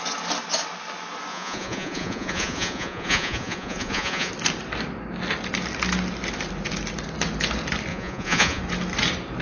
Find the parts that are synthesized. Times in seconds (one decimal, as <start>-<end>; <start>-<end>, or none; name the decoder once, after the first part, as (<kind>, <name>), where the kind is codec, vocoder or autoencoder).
1.3-4.3 (vocoder, Vocos); 7.9-8.6